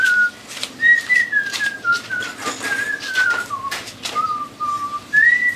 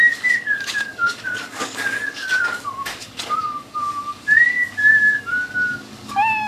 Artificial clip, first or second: second